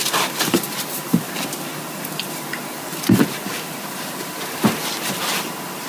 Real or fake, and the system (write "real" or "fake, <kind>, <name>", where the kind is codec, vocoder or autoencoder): real